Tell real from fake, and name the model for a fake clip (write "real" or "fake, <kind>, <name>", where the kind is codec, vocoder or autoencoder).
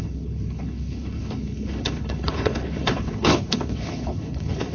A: fake, codec, HILCodec